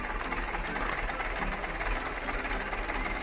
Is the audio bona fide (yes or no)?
yes